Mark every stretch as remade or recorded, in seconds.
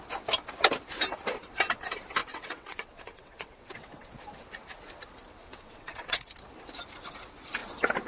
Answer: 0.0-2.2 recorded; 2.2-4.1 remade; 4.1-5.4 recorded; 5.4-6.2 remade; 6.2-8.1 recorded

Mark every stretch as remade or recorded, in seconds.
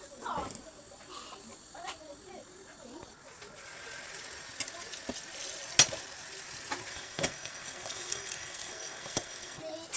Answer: 0.0-6.9 recorded; 6.9-9.6 remade; 9.6-10.0 recorded